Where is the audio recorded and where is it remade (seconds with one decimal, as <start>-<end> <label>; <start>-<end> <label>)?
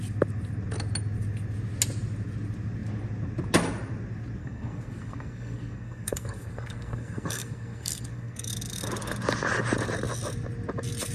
0.0-4.4 recorded; 4.4-8.5 remade; 8.5-11.1 recorded